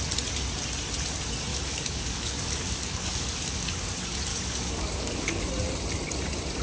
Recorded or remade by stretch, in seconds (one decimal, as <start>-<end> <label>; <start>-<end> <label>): 0.0-1.5 recorded; 1.5-3.9 remade; 3.9-4.3 recorded; 4.3-5.5 remade; 5.5-6.6 recorded